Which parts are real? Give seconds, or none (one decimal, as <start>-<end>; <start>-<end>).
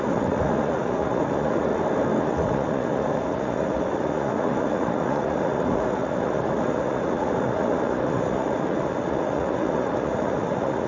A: 1.7-2.2